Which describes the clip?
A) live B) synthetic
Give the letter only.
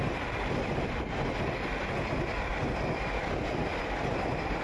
A